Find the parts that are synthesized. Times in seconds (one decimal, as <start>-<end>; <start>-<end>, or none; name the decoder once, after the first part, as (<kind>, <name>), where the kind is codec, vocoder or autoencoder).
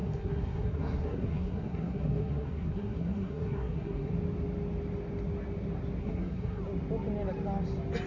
0.0-4.1 (codec, SNAC); 6.0-6.6